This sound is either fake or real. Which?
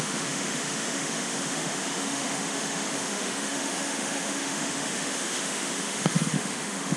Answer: fake